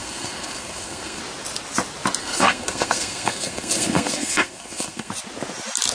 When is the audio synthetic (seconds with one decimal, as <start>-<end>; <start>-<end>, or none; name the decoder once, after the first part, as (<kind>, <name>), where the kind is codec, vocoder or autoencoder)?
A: 0.0-1.2 (codec, SNAC); 2.2-5.1